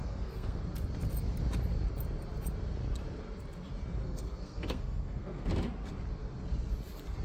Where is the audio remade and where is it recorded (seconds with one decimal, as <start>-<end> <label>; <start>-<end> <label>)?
0.0-0.6 remade; 0.6-4.0 recorded; 4.0-5.5 remade; 5.5-7.2 recorded